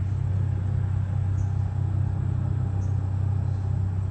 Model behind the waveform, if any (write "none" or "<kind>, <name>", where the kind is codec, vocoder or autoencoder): none